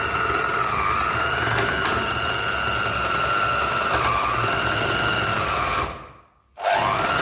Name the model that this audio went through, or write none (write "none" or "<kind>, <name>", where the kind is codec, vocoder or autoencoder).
none